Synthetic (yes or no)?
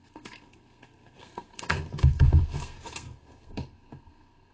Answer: yes